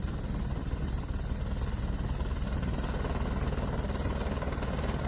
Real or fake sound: real